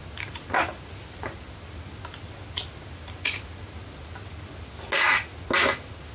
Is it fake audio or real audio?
real